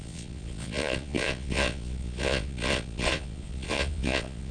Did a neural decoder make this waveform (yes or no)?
yes